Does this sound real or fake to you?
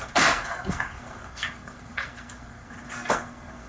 fake